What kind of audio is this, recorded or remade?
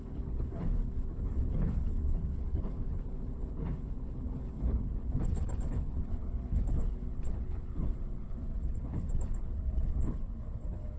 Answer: remade